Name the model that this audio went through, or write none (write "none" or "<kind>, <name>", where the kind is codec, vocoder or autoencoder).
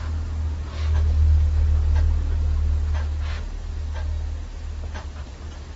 none